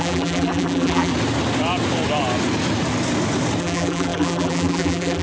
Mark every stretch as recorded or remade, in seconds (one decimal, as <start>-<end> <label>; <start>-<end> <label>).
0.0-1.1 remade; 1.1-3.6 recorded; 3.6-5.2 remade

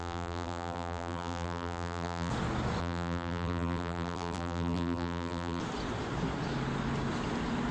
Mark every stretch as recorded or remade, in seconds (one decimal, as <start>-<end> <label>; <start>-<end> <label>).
0.0-2.3 remade; 2.3-2.8 recorded; 2.8-5.6 remade; 5.6-7.7 recorded

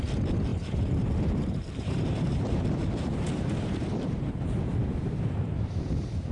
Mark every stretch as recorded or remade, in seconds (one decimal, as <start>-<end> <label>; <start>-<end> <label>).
0.0-0.5 recorded; 0.5-4.3 remade; 4.3-4.8 recorded; 4.8-5.7 remade; 5.7-6.3 recorded